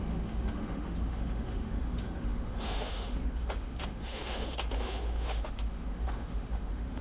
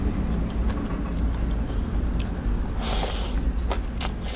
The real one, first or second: second